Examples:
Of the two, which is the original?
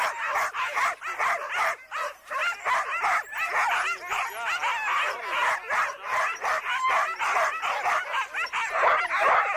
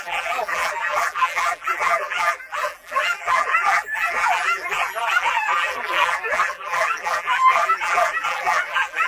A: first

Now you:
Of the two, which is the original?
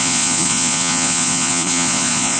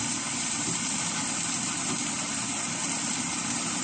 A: second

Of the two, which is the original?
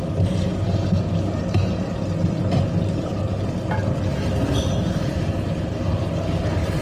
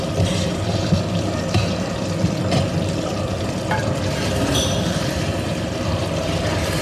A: first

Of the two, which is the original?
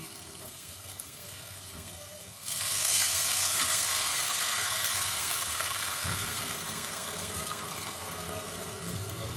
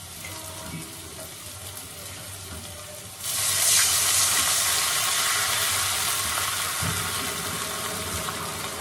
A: second